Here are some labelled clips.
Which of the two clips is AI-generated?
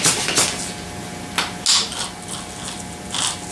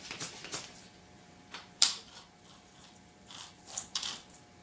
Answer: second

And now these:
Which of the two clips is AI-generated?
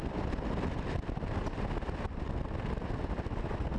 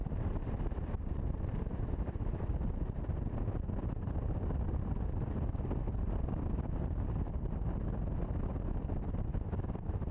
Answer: second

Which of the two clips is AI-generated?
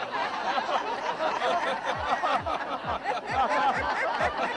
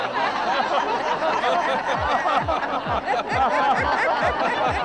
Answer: first